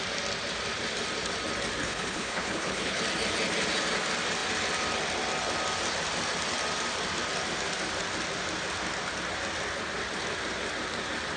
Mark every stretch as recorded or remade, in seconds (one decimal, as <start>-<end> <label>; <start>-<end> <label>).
0.0-1.8 recorded; 1.8-3.0 remade; 3.0-11.4 recorded

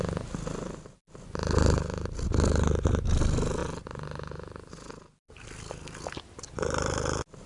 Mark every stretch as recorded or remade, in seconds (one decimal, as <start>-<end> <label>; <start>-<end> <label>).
0.0-7.5 recorded

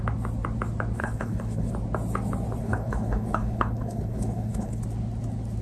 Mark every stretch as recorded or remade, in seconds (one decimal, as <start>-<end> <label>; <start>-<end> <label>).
0.0-1.0 recorded; 1.0-1.7 remade; 1.7-2.6 recorded; 2.6-4.8 remade; 4.8-5.6 recorded